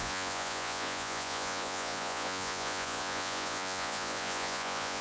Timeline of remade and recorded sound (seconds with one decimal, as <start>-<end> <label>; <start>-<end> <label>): 0.0-5.0 remade